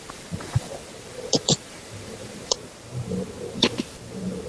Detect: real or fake fake